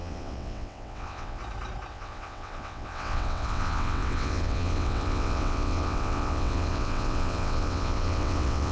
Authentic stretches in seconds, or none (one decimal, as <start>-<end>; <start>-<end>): 1.4-1.9